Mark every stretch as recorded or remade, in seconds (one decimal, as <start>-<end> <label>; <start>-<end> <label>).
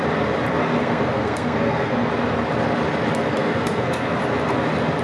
0.0-0.6 recorded; 0.6-2.1 remade; 2.1-3.3 recorded; 3.3-4.2 remade; 4.2-5.0 recorded